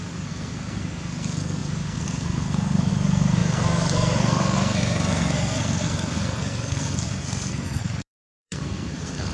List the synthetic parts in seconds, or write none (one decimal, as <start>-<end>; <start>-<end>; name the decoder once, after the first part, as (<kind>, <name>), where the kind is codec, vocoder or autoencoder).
0.0-9.3 (codec, SNAC)